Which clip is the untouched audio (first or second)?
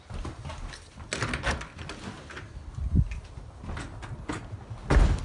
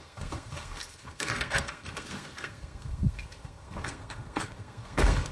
first